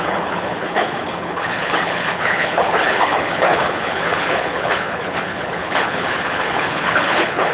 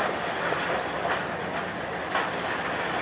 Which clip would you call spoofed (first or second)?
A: first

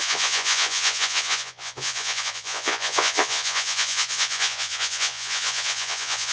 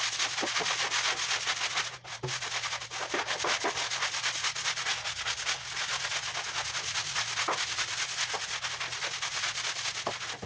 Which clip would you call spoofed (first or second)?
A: first